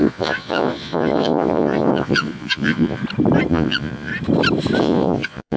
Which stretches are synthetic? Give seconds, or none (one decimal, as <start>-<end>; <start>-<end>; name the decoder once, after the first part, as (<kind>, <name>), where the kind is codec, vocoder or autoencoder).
0.0-3.0 (vocoder, Vocos); 3.5-4.1; 4.8-5.6